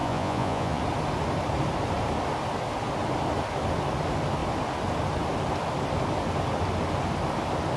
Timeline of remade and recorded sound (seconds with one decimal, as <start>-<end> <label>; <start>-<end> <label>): 0.0-0.8 remade; 0.8-7.8 recorded